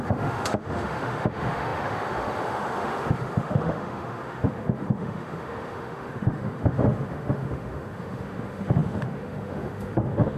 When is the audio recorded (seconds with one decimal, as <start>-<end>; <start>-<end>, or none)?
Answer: none